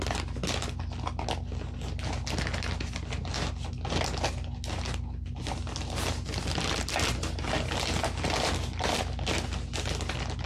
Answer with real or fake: real